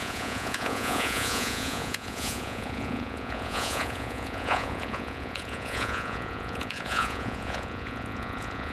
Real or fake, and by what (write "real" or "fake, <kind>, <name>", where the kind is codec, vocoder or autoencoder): fake, vocoder, Vocos